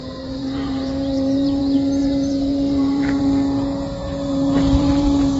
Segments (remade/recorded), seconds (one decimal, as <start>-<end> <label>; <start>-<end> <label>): 0.0-1.6 remade; 1.6-2.0 recorded; 2.0-3.2 remade; 3.2-4.0 recorded; 4.0-5.4 remade